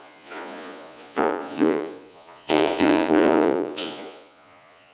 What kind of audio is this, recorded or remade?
remade